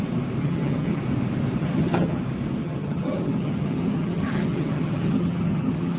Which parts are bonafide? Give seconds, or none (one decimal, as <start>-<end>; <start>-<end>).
0.0-0.4; 1.0-1.6; 2.2-2.6